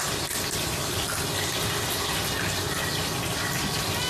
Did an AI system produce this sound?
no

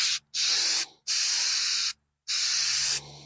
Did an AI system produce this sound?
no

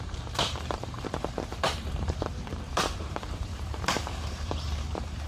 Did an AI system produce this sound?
yes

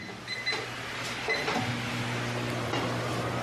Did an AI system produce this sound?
no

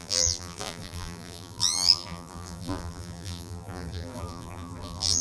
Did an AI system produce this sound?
yes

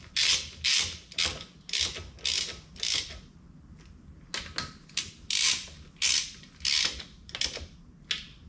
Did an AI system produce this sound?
no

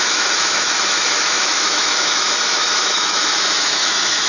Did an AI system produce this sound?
yes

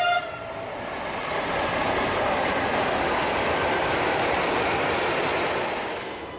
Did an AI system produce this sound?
yes